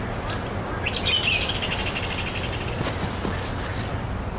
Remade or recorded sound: recorded